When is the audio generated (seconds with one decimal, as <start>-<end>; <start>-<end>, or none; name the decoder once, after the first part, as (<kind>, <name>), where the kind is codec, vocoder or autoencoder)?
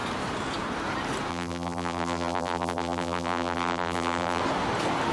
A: 1.3-4.4 (vocoder, BigVGAN v2)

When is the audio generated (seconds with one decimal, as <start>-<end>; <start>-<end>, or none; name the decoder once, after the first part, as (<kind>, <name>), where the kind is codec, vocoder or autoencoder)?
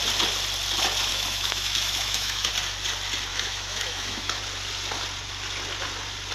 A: 1.1-2.5 (autoencoder, DAC-VAE); 3.3-4.4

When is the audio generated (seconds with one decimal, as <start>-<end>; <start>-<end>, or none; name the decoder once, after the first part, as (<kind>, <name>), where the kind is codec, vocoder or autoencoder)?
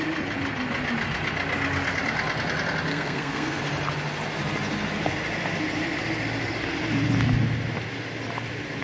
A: 2.9-3.6 (codec, SNAC)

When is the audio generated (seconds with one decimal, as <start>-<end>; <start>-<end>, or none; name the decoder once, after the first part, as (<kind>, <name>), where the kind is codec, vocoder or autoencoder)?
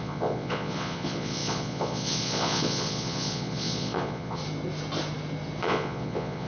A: 0.0-4.4 (vocoder, Vocos); 5.6-6.5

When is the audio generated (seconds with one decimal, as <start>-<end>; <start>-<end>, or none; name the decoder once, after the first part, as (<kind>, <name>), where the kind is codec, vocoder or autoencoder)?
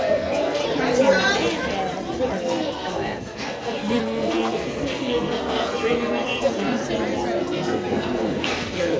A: 0.0-0.6 (codec, SNAC); 2.4-6.8; 7.4-9.0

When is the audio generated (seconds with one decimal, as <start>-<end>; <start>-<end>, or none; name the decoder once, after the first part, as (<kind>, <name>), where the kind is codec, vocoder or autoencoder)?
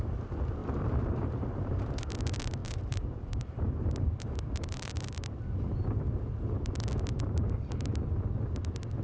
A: 0.6-1.9 (vocoder, BigVGAN v2); 2.6-5.8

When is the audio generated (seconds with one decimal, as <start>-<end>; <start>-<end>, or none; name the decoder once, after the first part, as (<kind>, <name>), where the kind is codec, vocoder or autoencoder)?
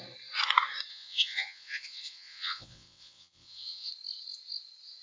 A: 0.9-3.9 (vocoder, WaveNeXt)